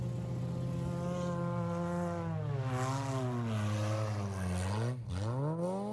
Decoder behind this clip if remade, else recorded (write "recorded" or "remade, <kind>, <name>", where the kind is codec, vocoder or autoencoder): recorded